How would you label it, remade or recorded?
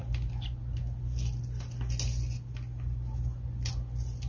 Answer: recorded